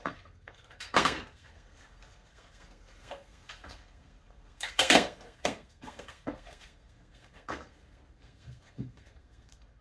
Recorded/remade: remade